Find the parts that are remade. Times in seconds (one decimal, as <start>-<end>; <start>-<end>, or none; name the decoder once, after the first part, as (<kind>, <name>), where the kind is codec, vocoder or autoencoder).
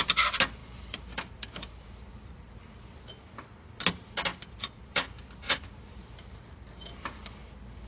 0.6-2.3 (vocoder, BigVGAN v2); 4.3-5.6